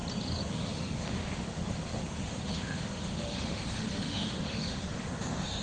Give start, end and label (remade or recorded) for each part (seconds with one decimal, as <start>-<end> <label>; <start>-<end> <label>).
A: 0.0-0.5 recorded; 0.5-5.6 remade

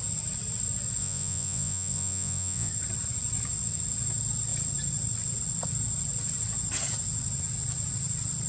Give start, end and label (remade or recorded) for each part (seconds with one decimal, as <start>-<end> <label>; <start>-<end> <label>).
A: 0.0-1.0 recorded; 1.0-2.7 remade; 2.7-8.5 recorded

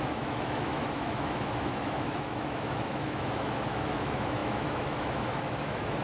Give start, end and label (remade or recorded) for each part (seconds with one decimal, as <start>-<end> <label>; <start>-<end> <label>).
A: 0.0-6.0 remade

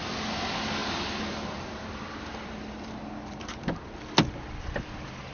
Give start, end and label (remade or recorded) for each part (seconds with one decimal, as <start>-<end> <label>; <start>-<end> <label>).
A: 0.0-0.8 recorded; 0.8-4.0 remade; 4.0-5.3 recorded

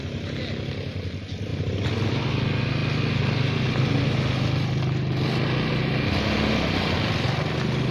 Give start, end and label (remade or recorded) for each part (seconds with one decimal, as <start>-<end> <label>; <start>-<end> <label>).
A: 0.0-7.9 recorded

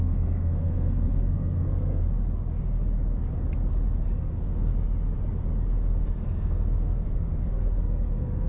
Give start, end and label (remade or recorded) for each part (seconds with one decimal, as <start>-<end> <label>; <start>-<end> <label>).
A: 0.0-2.0 remade; 2.0-4.2 recorded; 4.2-4.7 remade; 4.7-5.9 recorded; 5.9-8.5 remade

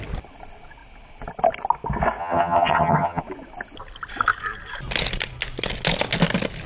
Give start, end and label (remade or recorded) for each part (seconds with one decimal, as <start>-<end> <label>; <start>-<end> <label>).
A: 0.0-2.2 recorded; 2.2-3.2 remade; 3.2-6.7 recorded